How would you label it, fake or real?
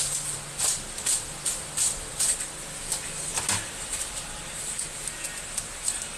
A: real